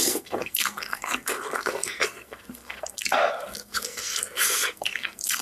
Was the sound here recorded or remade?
remade